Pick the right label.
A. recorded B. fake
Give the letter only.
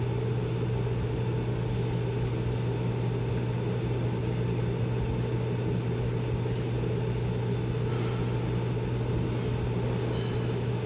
A